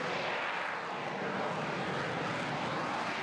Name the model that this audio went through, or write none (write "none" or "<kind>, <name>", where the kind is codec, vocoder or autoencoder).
none